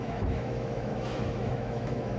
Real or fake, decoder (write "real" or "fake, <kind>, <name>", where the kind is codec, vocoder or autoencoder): fake, autoencoder, DAC-VAE